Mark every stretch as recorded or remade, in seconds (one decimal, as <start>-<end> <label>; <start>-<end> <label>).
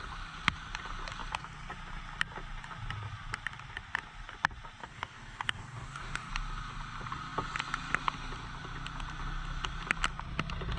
0.0-4.8 recorded; 4.8-6.3 remade; 6.3-10.8 recorded